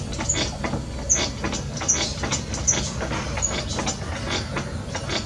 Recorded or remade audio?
recorded